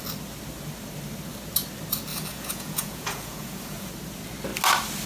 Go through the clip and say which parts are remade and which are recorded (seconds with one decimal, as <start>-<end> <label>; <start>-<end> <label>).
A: 0.0-2.1 recorded; 2.1-3.9 remade; 3.9-5.1 recorded